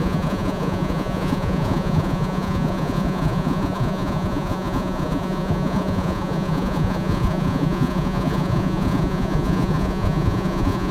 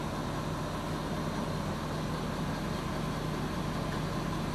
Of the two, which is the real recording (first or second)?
second